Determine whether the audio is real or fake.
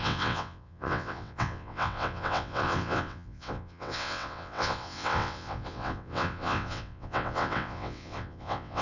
fake